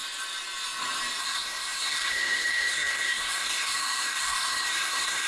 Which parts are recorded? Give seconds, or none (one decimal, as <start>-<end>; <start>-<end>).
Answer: 0.0-1.2